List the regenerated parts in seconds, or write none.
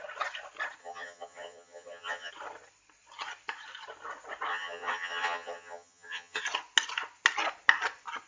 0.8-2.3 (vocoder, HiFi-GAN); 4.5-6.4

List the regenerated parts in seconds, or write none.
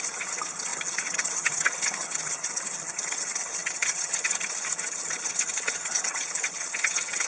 0.0-7.3 (vocoder, HiFi-GAN)